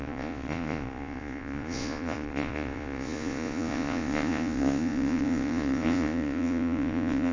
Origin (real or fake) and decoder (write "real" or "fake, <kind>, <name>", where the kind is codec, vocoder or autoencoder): fake, vocoder, Vocos